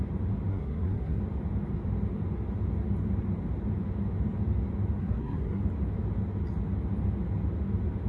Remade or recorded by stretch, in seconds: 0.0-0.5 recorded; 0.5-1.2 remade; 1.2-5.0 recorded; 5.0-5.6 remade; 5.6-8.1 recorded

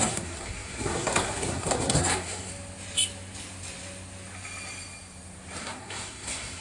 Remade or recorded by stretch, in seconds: 0.0-2.5 remade; 2.5-5.6 recorded; 5.6-6.6 remade

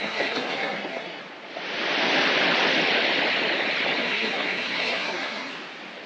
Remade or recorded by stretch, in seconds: 0.0-1.2 remade; 1.2-4.0 recorded; 4.0-5.5 remade; 5.5-6.1 recorded

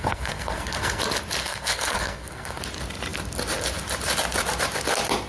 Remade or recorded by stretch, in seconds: 0.0-1.0 remade; 1.0-1.4 recorded; 1.4-2.6 remade; 2.6-5.3 recorded